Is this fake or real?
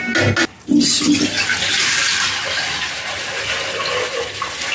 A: real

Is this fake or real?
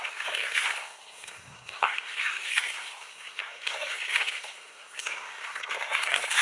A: fake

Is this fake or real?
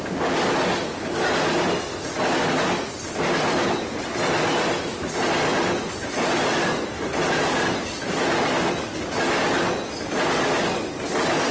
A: real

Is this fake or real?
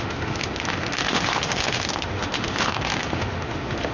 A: fake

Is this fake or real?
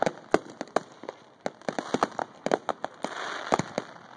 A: real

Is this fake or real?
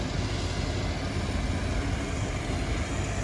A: real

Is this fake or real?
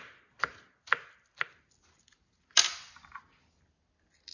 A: real